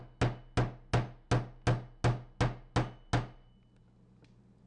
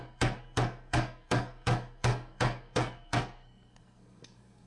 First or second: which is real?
first